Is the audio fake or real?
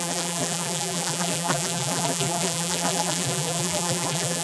fake